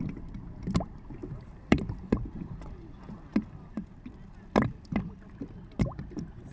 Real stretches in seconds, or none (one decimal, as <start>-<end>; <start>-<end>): 0.0-1.2; 2.5-6.5